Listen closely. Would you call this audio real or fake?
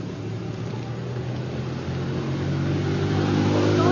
real